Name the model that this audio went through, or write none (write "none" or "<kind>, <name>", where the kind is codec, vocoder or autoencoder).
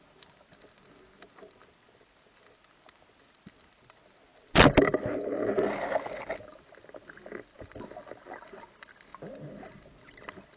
none